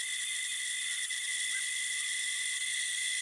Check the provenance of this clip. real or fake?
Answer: real